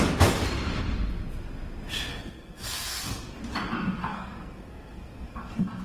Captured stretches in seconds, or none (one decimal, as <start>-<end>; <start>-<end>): 0.0-2.1; 3.4-4.0